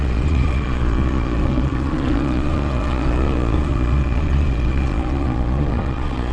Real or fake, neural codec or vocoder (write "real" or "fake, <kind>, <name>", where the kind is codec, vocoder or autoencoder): fake, vocoder, Vocos